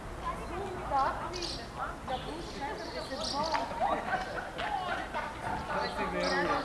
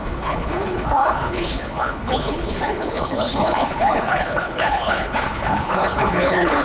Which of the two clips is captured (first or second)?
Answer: first